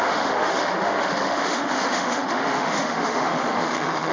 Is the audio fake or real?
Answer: fake